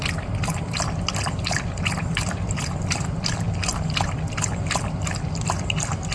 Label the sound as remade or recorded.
recorded